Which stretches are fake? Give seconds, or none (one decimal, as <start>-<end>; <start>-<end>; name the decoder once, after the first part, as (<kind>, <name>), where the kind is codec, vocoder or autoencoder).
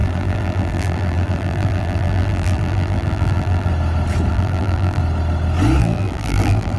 0.0-3.7 (vocoder, BigVGAN v2); 4.3-5.0; 5.8-6.8